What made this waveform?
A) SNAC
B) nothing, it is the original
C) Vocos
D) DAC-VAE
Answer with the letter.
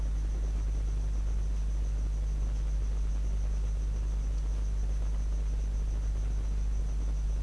B